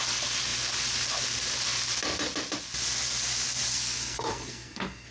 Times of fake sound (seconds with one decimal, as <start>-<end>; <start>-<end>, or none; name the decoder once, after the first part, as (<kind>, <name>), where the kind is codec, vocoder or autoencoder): 3.7-5.1 (codec, SNAC)